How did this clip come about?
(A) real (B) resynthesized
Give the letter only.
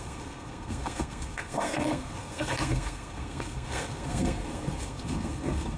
B